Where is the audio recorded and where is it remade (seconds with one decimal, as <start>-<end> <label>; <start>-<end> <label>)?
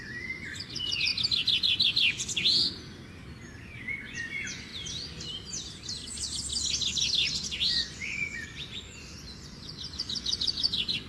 0.0-1.1 remade; 1.1-3.6 recorded; 3.6-4.7 remade; 4.7-7.7 recorded; 7.7-11.1 remade